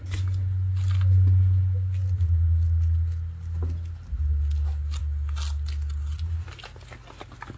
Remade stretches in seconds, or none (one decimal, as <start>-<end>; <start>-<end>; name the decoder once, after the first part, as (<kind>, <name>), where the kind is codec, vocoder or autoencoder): none